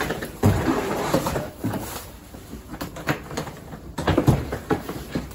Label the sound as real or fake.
fake